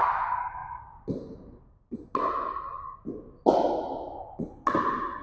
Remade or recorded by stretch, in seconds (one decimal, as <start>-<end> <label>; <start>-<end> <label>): 0.0-5.2 recorded